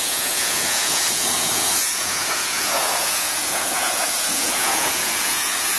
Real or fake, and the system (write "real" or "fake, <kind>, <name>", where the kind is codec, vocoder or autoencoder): fake, vocoder, Vocos